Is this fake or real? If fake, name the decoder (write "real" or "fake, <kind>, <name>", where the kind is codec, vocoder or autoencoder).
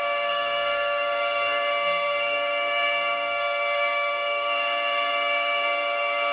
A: fake, codec, SNAC